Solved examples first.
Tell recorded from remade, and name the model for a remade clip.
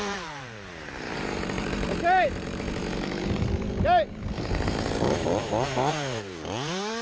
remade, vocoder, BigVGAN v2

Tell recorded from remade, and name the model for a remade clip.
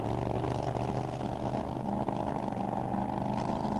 recorded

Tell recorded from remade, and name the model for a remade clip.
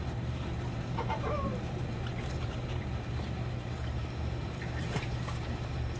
remade, vocoder, BigVGAN v2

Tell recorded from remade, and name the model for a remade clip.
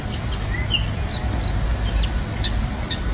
recorded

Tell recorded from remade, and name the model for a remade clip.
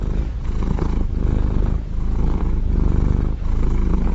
remade, vocoder, Vocos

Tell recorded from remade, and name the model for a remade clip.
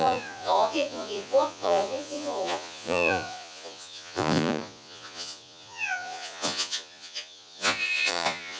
remade, vocoder, Vocos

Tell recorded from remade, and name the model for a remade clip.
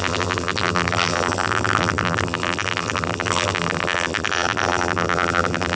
remade, vocoder, BigVGAN v2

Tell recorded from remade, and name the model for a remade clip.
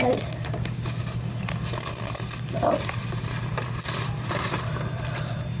recorded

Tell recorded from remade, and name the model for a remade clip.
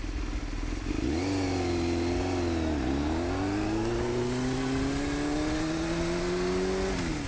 recorded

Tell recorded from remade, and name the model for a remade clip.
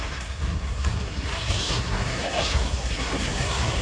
remade, codec, SNAC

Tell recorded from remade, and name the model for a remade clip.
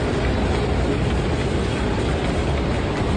recorded